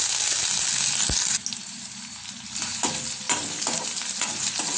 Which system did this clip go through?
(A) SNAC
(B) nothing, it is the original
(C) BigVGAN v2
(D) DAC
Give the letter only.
B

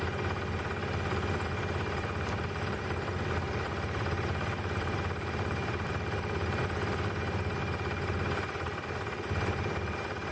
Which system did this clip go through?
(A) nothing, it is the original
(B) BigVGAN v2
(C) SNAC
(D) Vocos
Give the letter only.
B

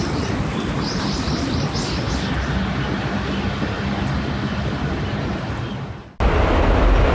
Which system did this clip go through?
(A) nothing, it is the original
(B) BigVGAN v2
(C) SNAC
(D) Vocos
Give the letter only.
A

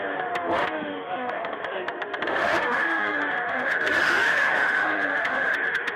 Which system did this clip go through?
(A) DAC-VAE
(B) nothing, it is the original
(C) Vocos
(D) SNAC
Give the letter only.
A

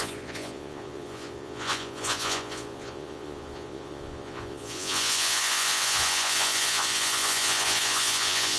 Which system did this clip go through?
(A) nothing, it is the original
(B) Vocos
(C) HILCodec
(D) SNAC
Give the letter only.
B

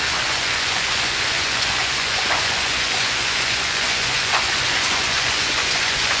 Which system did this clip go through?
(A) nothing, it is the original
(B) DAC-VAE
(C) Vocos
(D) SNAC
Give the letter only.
C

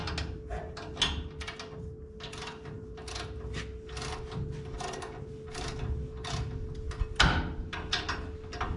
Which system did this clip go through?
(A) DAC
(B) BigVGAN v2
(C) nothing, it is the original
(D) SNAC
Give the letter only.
C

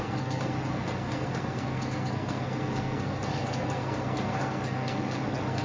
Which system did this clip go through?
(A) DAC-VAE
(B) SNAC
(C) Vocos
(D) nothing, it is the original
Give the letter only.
B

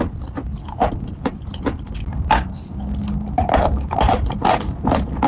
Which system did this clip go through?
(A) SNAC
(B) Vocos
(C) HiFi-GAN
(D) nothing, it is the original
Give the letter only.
D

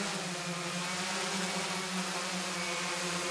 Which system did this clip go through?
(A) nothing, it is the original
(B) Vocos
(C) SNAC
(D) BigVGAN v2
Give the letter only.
A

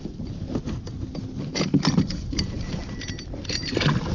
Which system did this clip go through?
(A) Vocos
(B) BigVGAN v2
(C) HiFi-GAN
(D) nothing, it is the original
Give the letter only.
D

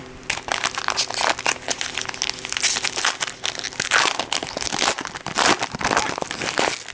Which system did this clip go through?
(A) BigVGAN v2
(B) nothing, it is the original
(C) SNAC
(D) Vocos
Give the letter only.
B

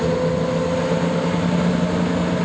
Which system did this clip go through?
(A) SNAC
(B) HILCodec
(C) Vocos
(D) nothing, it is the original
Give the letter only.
D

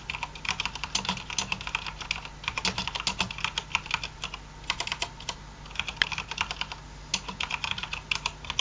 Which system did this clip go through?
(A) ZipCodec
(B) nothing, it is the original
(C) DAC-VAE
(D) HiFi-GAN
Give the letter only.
B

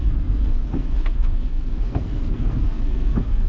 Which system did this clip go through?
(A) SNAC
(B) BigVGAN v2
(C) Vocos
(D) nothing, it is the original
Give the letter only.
A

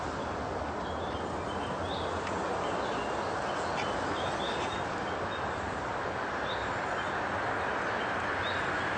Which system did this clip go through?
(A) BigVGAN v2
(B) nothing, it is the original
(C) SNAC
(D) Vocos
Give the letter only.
B